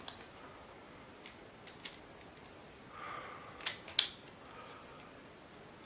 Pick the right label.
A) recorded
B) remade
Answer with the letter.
A